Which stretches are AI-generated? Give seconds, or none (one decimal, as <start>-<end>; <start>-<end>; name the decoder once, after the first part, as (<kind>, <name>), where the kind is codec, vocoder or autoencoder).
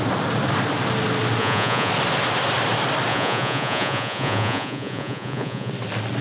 1.4-1.9 (vocoder, Vocos); 3.1-5.7